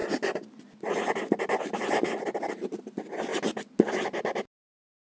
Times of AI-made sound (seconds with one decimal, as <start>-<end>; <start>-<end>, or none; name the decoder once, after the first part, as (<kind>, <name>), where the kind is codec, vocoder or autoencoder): none